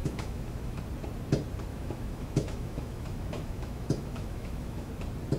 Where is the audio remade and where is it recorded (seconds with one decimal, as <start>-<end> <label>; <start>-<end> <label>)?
0.0-0.8 remade; 0.8-1.7 recorded; 1.7-4.9 remade; 4.9-5.4 recorded